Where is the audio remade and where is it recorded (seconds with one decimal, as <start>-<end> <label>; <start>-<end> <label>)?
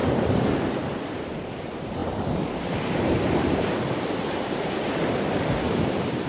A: 0.0-6.3 remade